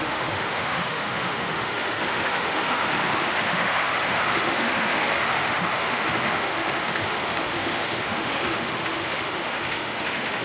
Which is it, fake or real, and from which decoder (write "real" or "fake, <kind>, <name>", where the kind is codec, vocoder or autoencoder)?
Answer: fake, autoencoder, DAC-VAE